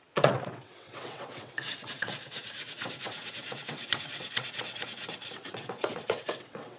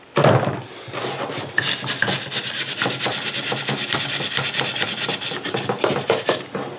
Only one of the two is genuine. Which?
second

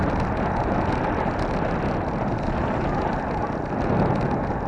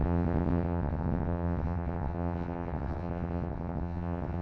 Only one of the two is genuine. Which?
first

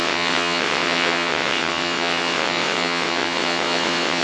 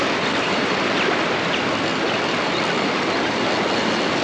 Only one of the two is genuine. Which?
second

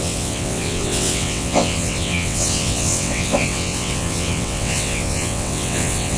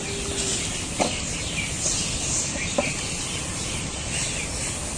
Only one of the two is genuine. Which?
second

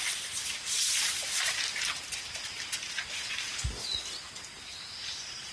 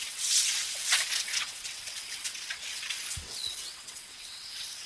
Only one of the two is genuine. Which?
first